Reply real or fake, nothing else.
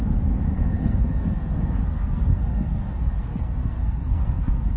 fake